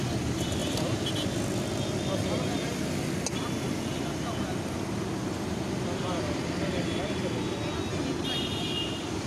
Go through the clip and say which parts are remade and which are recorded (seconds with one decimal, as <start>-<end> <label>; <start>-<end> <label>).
0.0-0.6 recorded; 0.6-1.1 remade; 1.1-9.3 recorded

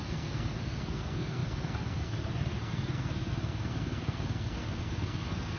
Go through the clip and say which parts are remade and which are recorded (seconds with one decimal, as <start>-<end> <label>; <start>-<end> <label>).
0.0-5.6 remade

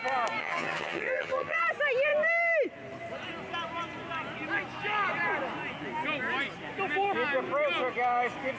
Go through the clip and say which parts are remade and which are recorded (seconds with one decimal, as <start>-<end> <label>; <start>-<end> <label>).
0.0-0.4 recorded; 0.4-1.6 remade; 1.6-8.6 recorded